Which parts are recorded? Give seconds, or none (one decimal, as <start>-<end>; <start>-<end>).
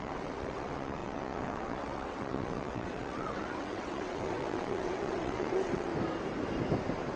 5.9-7.2